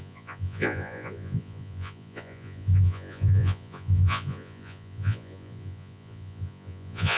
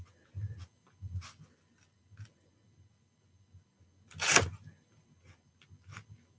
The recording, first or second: second